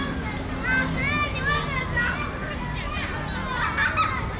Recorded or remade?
recorded